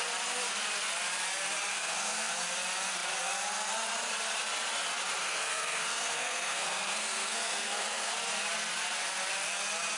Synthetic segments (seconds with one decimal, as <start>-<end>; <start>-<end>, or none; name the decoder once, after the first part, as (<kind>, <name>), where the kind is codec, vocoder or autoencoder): 1.7-2.3 (codec, SNAC); 5.2-8.1